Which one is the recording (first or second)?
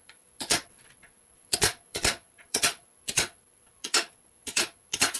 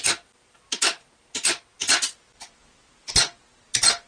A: second